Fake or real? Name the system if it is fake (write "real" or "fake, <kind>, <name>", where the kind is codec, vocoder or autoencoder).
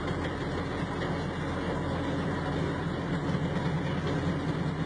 real